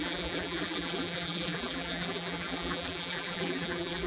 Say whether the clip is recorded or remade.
remade